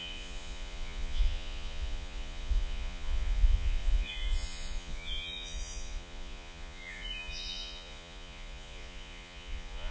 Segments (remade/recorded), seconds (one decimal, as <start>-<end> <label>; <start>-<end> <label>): 0.0-9.9 remade

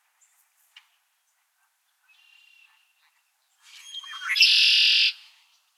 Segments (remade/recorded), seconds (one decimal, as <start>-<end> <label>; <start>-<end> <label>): 0.0-3.8 recorded; 3.8-5.3 remade; 5.3-5.8 recorded

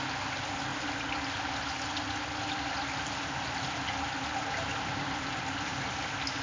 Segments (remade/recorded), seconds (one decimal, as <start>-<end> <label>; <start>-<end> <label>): 0.0-6.4 recorded